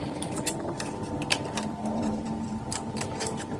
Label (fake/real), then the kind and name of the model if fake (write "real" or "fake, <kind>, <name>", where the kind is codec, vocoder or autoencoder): fake, vocoder, BigVGAN v2